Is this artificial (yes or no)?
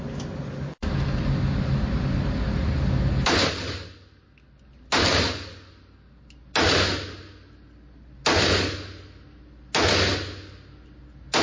no